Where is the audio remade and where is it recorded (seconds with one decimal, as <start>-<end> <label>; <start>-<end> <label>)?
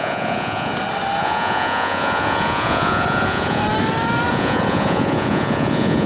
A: 0.0-0.7 remade; 0.7-1.2 recorded; 1.2-3.6 remade; 3.6-4.3 recorded; 4.3-6.1 remade